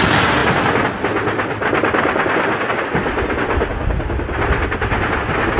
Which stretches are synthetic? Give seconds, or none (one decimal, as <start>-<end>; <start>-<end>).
none